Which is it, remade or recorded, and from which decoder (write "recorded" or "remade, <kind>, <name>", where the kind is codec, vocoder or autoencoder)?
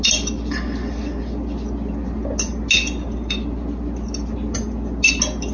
recorded